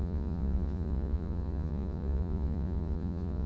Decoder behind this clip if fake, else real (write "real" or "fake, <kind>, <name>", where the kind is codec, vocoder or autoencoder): fake, vocoder, Vocos